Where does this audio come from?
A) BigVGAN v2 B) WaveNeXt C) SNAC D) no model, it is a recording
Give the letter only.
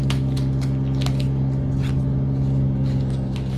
D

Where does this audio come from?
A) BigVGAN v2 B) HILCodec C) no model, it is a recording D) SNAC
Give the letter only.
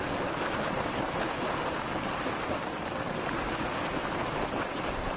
C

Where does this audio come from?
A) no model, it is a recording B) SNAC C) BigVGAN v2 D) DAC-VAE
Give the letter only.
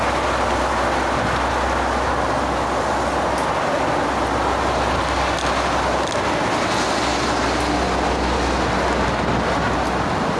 A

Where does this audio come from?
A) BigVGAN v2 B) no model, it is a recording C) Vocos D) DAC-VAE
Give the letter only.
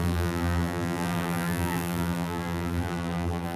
A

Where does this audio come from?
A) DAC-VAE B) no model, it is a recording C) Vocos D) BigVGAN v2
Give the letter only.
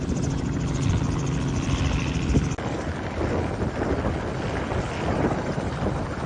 B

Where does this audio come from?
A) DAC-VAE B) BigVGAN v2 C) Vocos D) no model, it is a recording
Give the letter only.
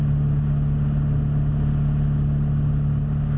D